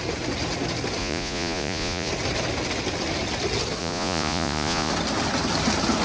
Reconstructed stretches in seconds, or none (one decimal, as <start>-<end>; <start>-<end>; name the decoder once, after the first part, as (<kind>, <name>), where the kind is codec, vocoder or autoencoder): 1.0-2.1 (vocoder, Vocos); 3.8-4.9